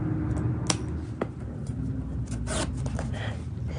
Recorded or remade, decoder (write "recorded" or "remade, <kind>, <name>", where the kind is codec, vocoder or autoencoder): recorded